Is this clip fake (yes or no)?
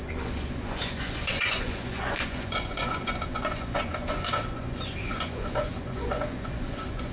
yes